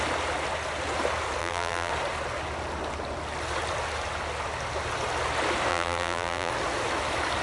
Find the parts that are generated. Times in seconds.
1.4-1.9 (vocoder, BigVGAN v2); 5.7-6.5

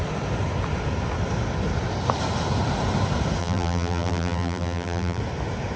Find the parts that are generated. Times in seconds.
3.4-5.2 (vocoder, BigVGAN v2)

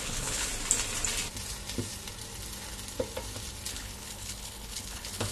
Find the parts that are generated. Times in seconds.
0.0-0.5 (codec, HILCodec); 3.7-5.3

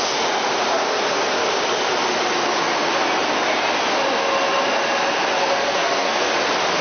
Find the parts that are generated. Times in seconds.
5.4-6.3 (codec, SNAC)

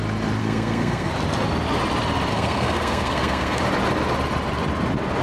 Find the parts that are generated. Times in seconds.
0.4-1.1 (codec, SNAC); 2.3-3.6

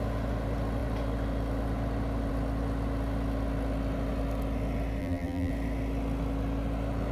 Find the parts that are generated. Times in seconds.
5.0-5.5 (vocoder, BigVGAN v2)